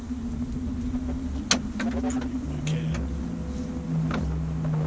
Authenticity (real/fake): real